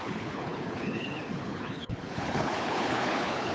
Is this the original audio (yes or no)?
no